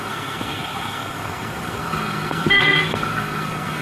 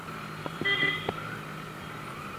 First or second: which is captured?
second